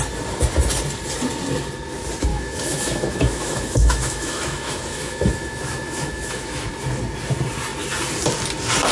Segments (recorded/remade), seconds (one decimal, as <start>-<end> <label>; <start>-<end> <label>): 0.0-2.3 recorded; 2.3-6.7 remade; 6.7-8.9 recorded